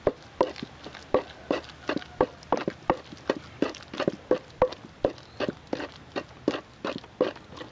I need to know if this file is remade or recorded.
recorded